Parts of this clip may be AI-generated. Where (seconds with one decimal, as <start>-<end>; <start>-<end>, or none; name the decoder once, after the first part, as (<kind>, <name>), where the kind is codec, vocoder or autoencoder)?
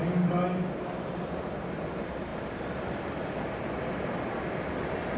none